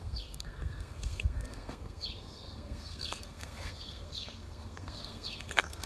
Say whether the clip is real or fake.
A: fake